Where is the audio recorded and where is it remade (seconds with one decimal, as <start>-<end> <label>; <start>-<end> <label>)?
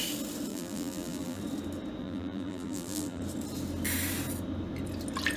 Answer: 0.0-0.5 recorded; 0.5-1.4 remade; 1.4-2.0 recorded; 2.0-3.2 remade; 3.2-5.4 recorded